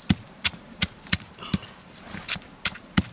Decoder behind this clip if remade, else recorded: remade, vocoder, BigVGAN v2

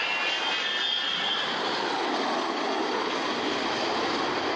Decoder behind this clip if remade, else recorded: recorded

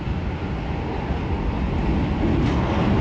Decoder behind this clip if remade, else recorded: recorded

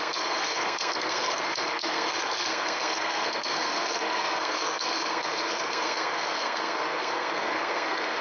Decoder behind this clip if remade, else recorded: remade, codec, SNAC